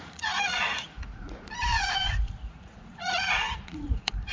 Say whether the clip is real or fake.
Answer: fake